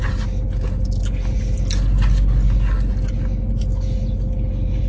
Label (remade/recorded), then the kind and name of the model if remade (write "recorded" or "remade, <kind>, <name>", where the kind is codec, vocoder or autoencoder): recorded